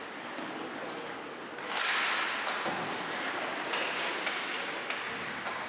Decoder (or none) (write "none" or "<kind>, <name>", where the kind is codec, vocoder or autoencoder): none